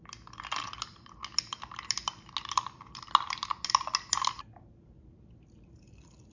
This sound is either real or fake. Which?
real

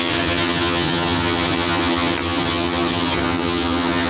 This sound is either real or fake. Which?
fake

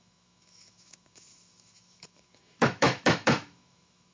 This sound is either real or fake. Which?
fake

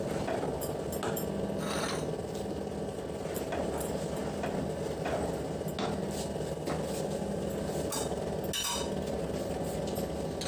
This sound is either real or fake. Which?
real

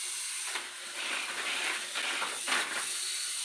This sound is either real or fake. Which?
real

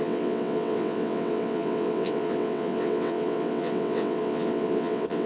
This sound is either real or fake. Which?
fake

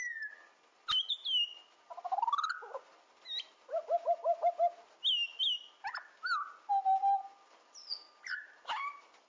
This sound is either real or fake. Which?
real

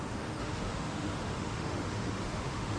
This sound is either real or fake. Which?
fake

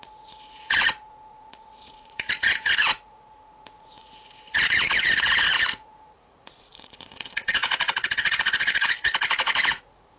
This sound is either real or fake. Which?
fake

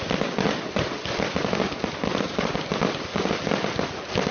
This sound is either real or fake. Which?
real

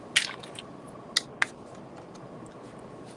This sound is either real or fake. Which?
real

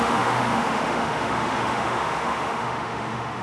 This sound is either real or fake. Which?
fake